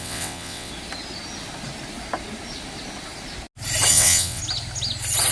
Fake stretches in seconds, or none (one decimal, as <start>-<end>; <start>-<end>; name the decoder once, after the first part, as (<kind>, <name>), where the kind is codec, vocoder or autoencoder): 0.0-0.7 (vocoder, WaveNeXt); 3.9-4.4